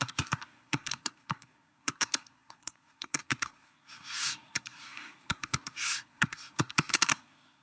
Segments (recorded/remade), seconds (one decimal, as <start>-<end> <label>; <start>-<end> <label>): 0.0-7.6 remade